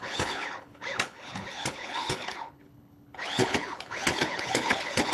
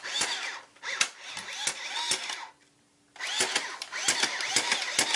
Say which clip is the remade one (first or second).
first